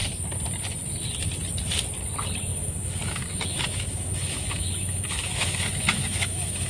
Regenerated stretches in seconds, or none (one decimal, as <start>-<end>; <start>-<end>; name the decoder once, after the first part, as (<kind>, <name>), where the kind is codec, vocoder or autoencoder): 2.5-6.7 (autoencoder, DAC-VAE)